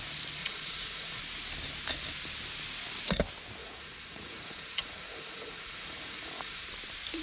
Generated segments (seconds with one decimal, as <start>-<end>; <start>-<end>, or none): 0.4-1.2; 3.6-6.7

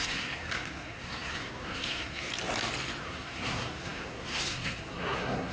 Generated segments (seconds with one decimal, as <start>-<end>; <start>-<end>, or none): 0.0-2.3; 3.0-5.5

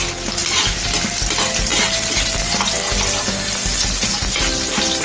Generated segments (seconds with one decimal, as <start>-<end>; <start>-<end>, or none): none

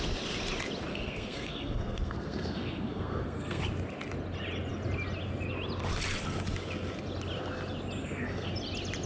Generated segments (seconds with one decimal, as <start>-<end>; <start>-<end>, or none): 0.9-3.6; 8.0-8.5

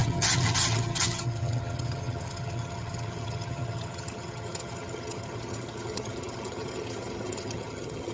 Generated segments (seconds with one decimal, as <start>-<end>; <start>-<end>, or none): 0.0-8.1

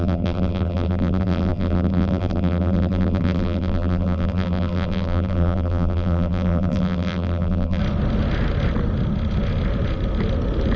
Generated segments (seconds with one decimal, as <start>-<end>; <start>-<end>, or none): 0.0-7.8